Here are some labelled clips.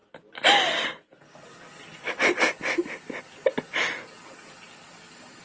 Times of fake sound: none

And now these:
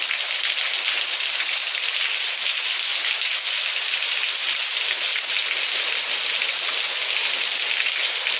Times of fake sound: none

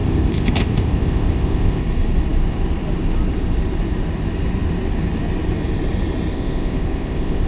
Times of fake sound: 0.0-1.8; 6.3-7.5

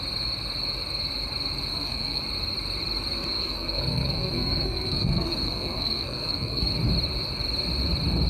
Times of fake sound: 1.7-2.2; 3.4-6.7

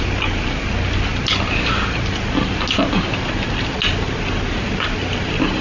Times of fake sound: none

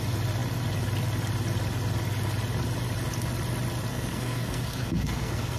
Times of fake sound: 3.9-5.6

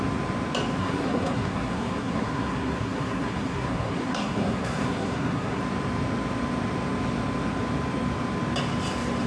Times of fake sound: 0.8-5.6